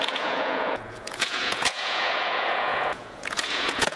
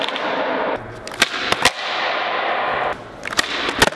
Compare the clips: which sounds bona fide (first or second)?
second